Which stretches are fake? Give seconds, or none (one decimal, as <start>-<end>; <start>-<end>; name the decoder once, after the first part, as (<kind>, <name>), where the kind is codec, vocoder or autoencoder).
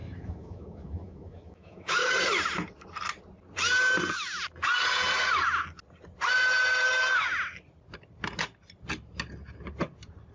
0.0-2.1 (autoencoder, DAC-VAE)